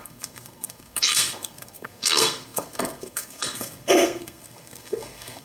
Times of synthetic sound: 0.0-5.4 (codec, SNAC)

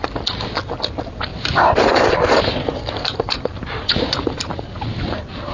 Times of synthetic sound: 1.3-4.6 (vocoder, BigVGAN v2)

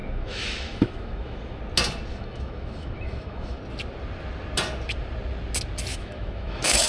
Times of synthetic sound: 0.0-1.6 (autoencoder, DAC-VAE); 2.1-3.6; 5.9-6.9

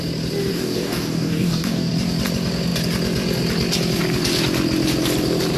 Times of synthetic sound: 0.5-1.9 (codec, DAC)